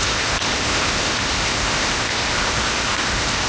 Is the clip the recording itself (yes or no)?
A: no